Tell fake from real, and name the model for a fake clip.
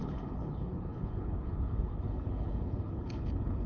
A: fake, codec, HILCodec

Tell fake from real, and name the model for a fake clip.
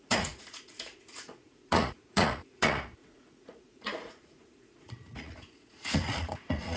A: fake, vocoder, Vocos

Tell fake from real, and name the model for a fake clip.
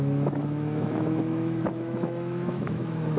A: fake, autoencoder, DAC-VAE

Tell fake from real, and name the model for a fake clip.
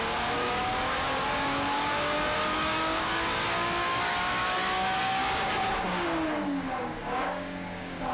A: fake, codec, DAC